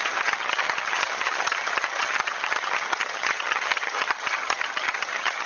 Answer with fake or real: fake